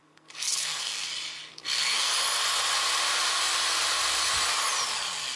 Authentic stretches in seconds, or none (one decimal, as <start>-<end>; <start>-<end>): 1.1-1.5; 2.1-5.4